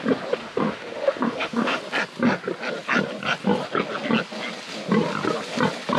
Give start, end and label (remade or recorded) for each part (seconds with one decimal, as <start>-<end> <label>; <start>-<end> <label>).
0.0-0.4 recorded; 0.4-1.8 remade; 1.8-6.0 recorded